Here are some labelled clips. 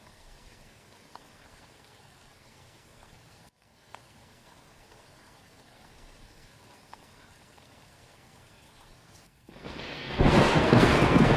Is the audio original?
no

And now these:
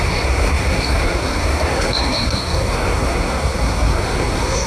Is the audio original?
no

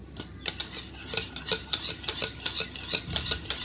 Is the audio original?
yes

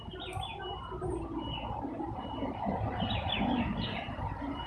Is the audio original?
yes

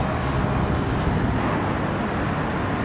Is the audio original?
yes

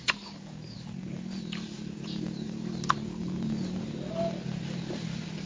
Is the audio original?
yes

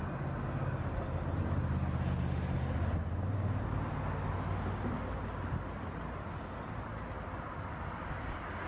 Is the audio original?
yes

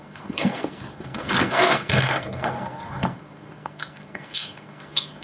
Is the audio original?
no